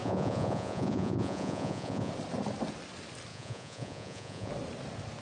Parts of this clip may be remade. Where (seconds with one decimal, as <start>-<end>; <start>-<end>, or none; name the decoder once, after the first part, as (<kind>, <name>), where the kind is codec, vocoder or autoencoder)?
0.0-2.1 (vocoder, Vocos); 3.3-4.5